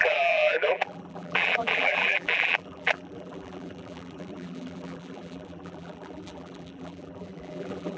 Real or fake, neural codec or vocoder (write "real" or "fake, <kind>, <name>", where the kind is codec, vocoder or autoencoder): fake, vocoder, BigVGAN v2